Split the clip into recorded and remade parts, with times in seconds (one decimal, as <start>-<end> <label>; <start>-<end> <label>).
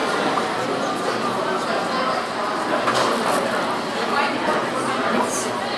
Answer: 0.0-5.8 recorded